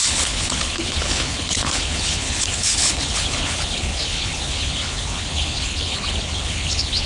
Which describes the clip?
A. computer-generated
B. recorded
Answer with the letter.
A